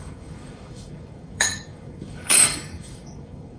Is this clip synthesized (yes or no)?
yes